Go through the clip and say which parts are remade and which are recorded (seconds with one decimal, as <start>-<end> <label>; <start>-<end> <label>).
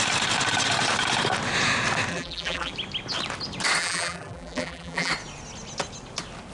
0.0-2.1 recorded; 2.1-2.7 remade; 2.7-3.8 recorded; 3.8-5.1 remade; 5.1-6.5 recorded